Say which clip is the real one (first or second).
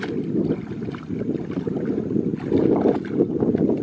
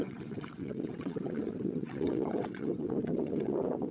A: first